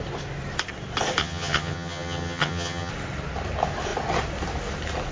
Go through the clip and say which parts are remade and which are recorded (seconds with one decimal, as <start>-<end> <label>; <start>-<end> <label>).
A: 0.0-1.2 recorded; 1.2-2.9 remade; 2.9-5.1 recorded